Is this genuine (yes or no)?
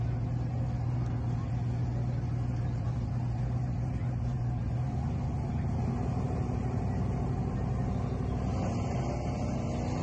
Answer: yes